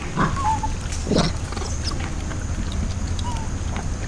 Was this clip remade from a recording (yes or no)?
no